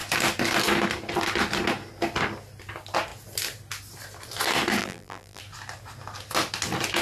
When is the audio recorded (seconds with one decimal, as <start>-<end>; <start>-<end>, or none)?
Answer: 0.0-4.8; 5.4-7.0